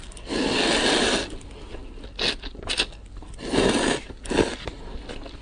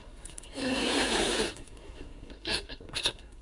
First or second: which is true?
first